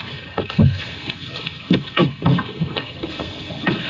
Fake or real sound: fake